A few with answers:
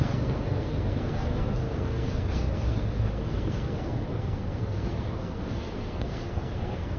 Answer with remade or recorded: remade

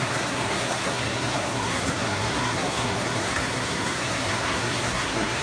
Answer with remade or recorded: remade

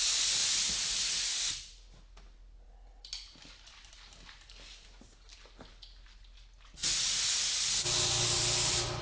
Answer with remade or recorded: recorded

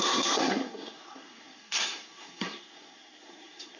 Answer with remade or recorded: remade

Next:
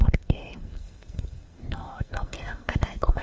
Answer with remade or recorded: remade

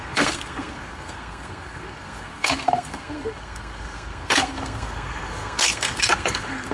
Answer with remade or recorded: remade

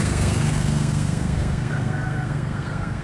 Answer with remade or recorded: remade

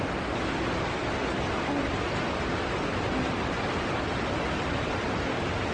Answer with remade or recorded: recorded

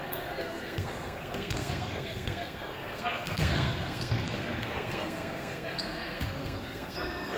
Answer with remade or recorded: remade